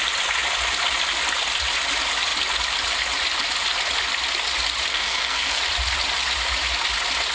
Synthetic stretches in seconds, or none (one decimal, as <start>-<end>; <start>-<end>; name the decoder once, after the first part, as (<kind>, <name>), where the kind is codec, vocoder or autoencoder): 4.9-5.6 (codec, SNAC)